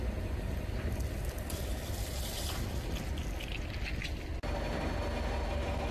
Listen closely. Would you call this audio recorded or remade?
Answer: recorded